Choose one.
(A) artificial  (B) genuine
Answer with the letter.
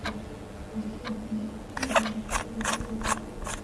B